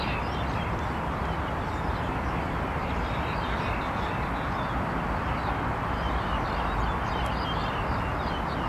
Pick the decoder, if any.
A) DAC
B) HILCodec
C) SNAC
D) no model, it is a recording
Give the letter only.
D